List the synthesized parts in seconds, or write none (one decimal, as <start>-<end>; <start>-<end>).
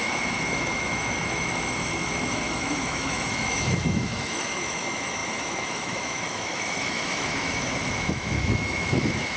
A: 0.0-9.4